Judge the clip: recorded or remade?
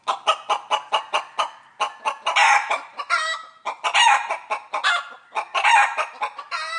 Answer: recorded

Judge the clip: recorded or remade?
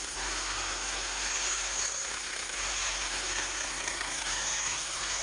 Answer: remade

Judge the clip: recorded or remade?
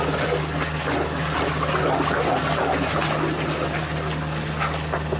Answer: recorded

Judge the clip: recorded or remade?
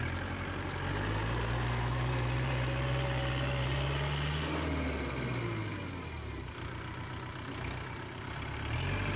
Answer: recorded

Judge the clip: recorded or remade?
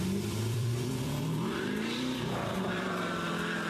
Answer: remade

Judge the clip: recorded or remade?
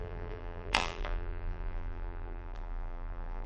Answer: remade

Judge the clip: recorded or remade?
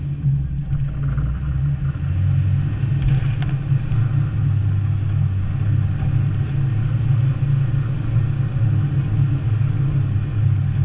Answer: recorded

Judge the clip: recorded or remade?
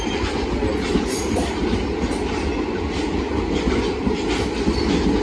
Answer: recorded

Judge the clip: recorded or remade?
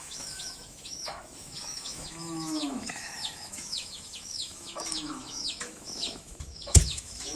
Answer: remade